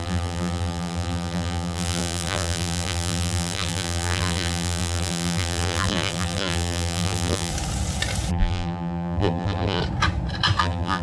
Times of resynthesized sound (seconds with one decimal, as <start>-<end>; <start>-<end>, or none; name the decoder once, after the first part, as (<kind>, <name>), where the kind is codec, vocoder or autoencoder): 0.0-7.5 (vocoder, BigVGAN v2); 8.3-9.8; 10.6-11.0